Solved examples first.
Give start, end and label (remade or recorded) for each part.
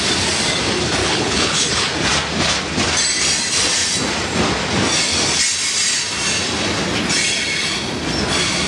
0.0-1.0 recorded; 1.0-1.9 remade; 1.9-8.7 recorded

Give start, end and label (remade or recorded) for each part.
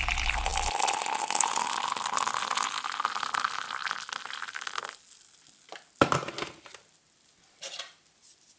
0.0-8.6 recorded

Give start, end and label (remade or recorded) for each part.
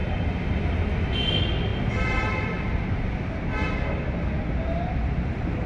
0.0-5.7 recorded